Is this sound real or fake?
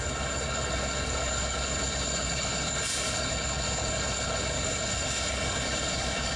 fake